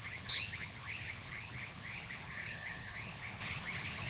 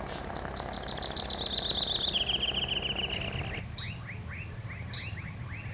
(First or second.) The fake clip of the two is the first